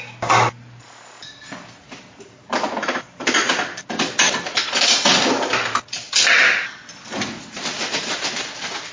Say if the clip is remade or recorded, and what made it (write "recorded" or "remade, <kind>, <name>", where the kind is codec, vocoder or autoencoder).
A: recorded